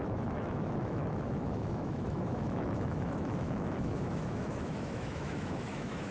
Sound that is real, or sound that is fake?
fake